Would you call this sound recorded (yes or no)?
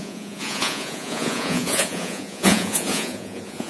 no